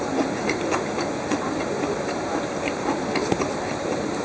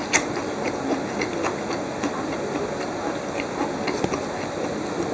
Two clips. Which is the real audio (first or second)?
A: second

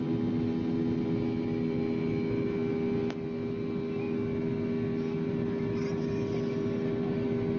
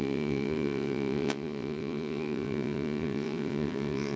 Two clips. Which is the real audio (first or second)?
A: first